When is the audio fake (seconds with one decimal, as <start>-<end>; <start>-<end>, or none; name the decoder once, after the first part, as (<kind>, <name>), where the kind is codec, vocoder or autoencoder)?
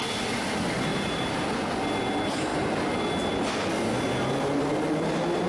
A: 0.9-1.4 (vocoder, BigVGAN v2)